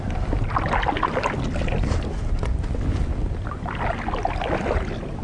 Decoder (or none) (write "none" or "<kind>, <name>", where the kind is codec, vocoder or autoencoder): none